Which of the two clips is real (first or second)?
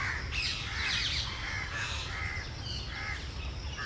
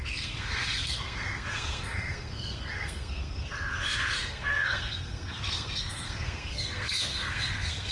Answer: first